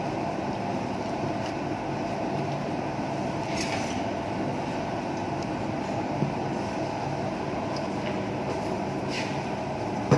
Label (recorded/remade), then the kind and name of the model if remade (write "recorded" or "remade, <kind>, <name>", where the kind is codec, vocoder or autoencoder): recorded